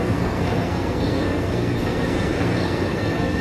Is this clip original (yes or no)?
no